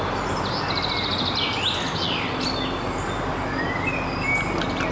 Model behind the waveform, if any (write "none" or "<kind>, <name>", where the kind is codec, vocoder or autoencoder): none